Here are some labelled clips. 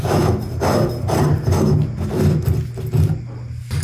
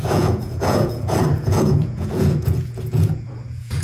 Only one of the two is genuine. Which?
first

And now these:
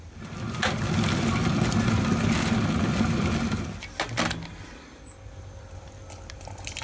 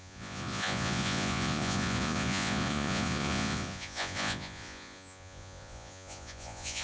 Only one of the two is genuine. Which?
first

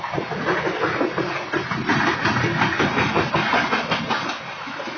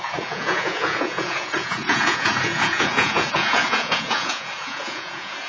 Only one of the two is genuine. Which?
first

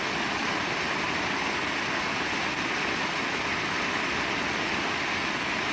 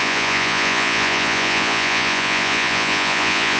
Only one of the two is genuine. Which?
first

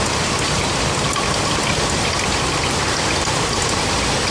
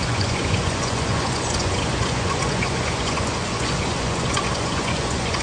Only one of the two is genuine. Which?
first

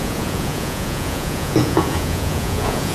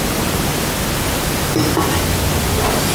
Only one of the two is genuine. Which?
second